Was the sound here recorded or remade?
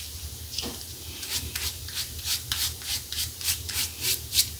remade